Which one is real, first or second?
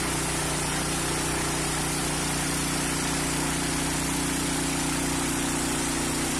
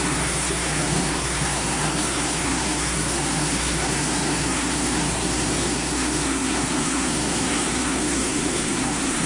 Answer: first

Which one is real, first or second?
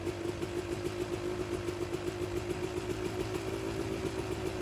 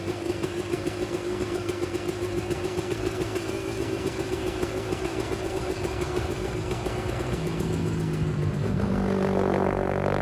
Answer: first